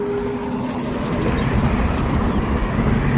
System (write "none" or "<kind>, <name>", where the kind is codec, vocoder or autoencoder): none